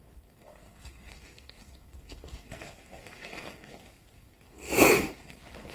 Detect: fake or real fake